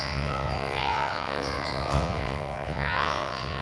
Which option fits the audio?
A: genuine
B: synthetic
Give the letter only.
B